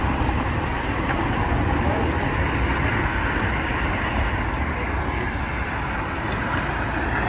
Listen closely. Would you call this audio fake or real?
real